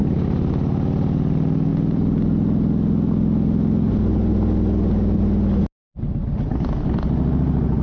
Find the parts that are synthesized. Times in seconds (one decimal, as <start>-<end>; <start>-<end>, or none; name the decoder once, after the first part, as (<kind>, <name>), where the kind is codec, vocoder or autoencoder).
none